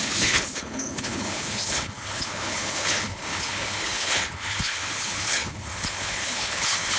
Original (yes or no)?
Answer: no